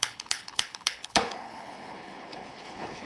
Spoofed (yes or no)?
yes